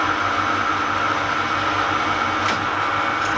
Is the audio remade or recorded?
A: recorded